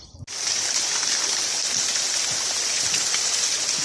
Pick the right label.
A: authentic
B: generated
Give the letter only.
A